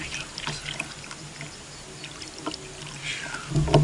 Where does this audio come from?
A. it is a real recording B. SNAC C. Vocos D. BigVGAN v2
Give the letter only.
A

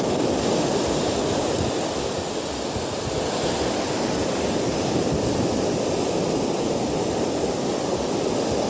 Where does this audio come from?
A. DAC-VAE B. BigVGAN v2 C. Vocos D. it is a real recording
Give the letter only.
D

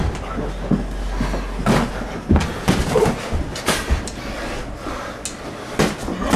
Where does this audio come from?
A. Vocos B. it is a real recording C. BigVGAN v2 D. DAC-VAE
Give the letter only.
B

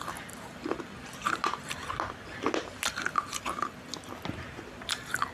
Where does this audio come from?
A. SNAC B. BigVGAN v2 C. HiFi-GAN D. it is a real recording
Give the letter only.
D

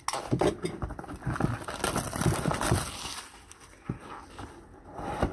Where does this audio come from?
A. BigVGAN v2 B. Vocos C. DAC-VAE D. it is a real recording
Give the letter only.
D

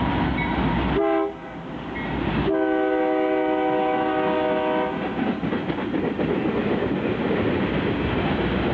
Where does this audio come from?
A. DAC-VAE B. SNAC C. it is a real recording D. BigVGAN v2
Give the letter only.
C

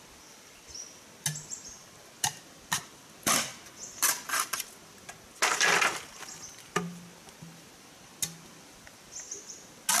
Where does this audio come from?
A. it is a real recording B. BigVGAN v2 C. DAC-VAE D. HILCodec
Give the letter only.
A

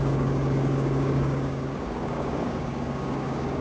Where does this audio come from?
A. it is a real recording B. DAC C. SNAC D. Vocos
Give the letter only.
B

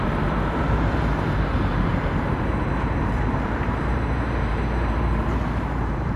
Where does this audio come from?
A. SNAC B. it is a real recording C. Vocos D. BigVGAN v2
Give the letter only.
D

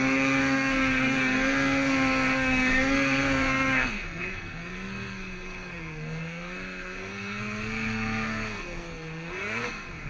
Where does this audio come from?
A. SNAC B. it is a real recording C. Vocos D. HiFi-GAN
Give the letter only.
A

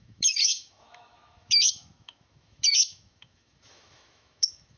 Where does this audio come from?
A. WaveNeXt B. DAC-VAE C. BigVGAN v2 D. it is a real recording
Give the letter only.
B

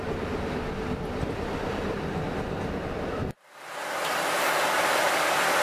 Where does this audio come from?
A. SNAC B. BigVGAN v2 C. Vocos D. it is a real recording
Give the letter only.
D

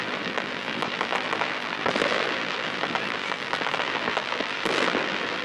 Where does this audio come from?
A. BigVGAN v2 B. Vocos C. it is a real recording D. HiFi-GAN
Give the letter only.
A